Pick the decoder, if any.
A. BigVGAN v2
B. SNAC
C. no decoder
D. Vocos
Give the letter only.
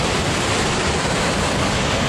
C